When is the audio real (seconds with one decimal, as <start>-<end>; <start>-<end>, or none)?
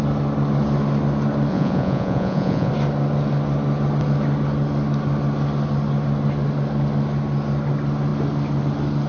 0.0-1.5; 2.7-9.1